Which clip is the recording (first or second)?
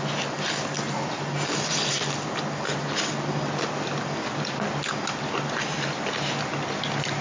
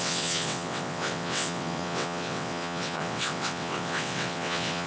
first